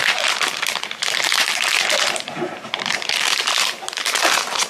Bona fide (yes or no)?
no